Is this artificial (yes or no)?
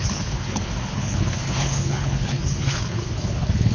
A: yes